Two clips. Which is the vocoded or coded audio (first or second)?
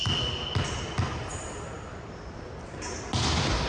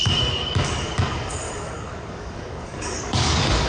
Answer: second